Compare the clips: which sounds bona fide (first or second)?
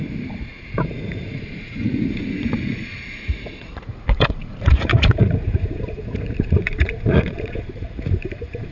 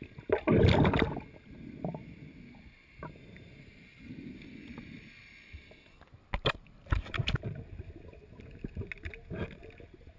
second